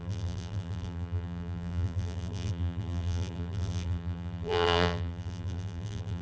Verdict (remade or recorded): remade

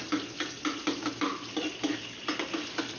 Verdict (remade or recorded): recorded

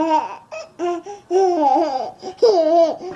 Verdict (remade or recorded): recorded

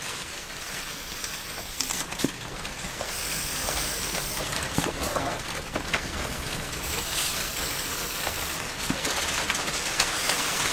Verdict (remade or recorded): remade